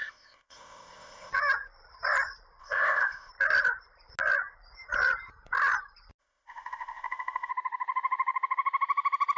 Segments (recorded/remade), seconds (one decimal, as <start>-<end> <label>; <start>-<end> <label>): 0.0-1.3 remade; 1.3-2.6 recorded; 2.6-3.3 remade; 3.3-6.2 recorded; 6.2-7.5 remade; 7.5-9.4 recorded